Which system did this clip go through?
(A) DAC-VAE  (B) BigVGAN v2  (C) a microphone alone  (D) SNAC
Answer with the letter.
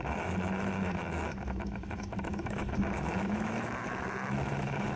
A